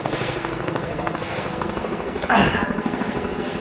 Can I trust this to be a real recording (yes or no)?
no